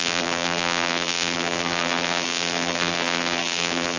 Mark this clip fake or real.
fake